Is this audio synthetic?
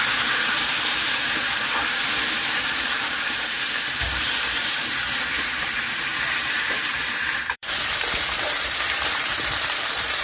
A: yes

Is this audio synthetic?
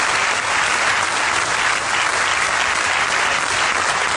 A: no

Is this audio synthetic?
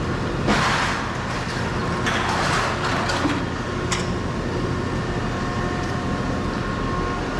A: no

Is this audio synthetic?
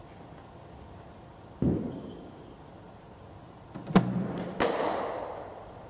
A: no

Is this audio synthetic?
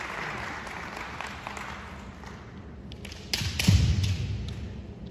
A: no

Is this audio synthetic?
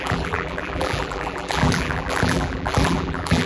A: yes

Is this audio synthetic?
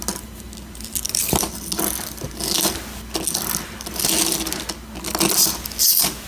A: no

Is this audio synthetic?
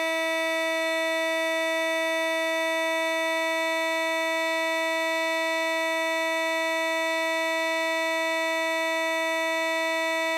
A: no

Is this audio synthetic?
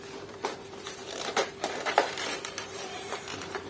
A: yes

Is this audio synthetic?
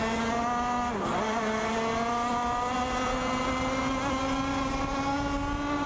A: no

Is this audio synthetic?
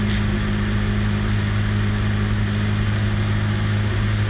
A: no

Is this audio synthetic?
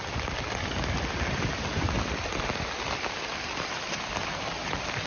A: no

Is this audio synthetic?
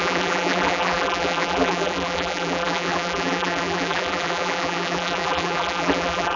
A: yes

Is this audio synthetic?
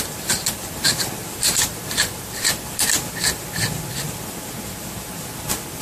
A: yes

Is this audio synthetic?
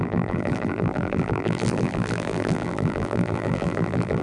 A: yes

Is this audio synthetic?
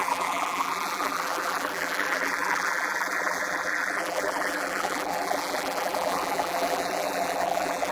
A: yes